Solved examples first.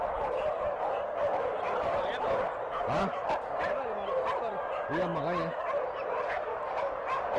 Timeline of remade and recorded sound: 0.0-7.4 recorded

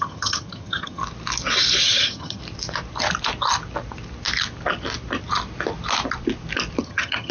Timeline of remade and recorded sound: 0.0-1.0 remade; 1.0-1.8 recorded; 1.8-2.4 remade; 2.4-6.8 recorded; 6.8-7.3 remade

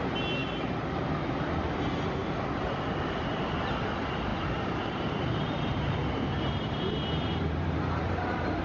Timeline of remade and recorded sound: 0.0-0.4 recorded; 0.4-0.9 remade; 0.9-4.3 recorded; 4.3-8.6 remade

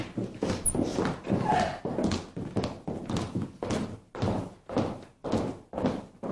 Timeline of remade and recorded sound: 0.0-6.3 recorded

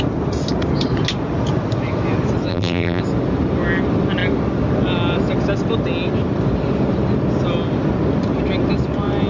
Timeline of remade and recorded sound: 0.0-2.5 recorded; 2.5-3.0 remade; 3.0-9.3 recorded

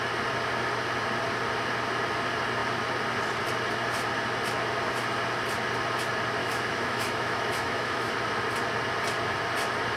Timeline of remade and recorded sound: 0.0-6.4 recorded; 6.4-8.1 remade; 8.1-10.0 recorded

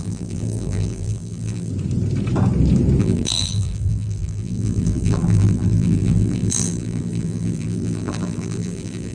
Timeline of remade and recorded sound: 0.0-1.7 remade; 1.7-3.0 recorded; 3.0-9.1 remade

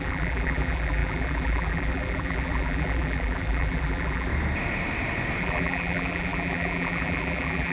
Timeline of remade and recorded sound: 0.0-4.3 remade; 4.3-5.4 recorded; 5.4-7.7 remade